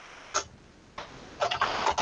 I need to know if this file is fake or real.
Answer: real